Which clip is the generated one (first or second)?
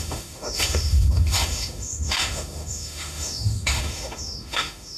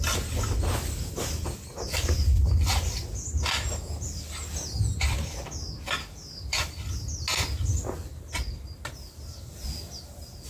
first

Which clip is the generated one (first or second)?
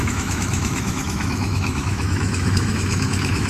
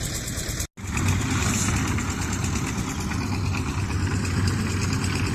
first